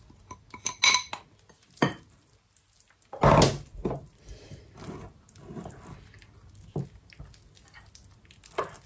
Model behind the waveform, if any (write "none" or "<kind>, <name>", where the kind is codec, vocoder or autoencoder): none